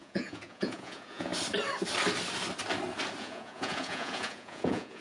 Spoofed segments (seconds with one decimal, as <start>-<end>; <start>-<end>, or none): 0.0-1.3; 3.2-5.0